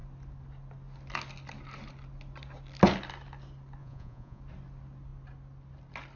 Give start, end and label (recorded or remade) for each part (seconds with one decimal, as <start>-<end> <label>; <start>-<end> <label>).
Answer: 0.0-3.8 recorded; 3.8-4.4 remade; 4.4-6.2 recorded

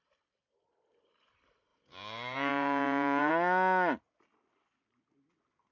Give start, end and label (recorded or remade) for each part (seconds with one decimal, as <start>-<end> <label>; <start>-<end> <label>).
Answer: 0.0-1.7 recorded; 1.7-3.3 remade; 3.3-5.7 recorded